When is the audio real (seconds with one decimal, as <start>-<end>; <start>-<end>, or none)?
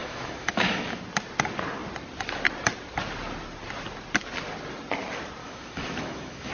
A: 1.0-5.4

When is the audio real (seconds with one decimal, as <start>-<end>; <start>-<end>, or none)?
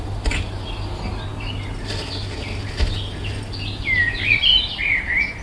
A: 0.0-5.4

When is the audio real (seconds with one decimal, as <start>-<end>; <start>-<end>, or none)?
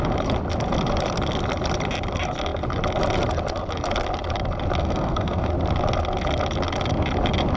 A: 0.0-4.8; 5.5-7.6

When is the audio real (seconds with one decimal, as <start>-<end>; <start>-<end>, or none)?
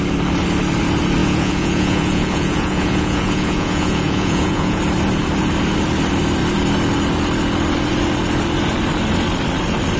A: 0.0-1.2; 4.8-10.0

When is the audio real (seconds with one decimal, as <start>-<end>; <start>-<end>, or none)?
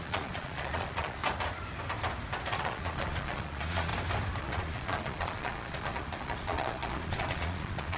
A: 1.2-2.5; 3.9-4.4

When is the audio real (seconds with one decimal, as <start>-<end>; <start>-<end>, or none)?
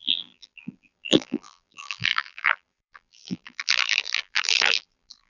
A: none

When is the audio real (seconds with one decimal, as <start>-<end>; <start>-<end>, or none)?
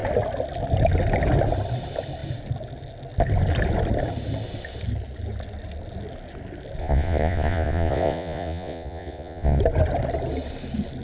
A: 0.0-6.8; 9.6-11.0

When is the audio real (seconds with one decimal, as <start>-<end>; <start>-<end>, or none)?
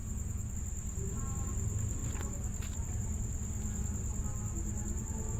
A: 0.5-5.4